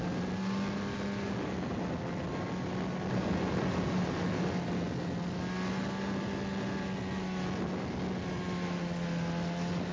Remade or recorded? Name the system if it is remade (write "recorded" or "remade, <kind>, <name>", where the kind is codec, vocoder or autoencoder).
recorded